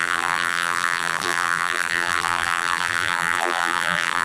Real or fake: fake